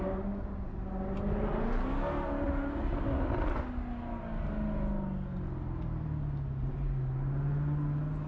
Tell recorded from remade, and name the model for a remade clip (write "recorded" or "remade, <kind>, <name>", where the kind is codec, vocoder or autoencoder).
recorded